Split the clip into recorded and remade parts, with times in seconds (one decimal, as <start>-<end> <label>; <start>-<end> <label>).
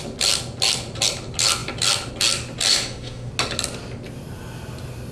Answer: 0.0-2.7 recorded; 2.7-3.3 remade; 3.3-5.1 recorded